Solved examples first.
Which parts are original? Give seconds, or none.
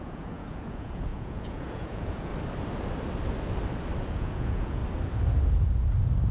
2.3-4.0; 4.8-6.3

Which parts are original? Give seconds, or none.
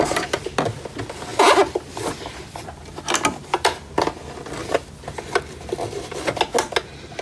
0.0-1.3; 3.9-4.6; 6.4-7.2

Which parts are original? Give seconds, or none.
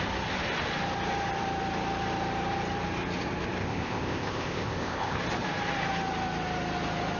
0.0-3.6; 5.2-7.2